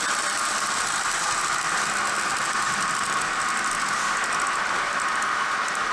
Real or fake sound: real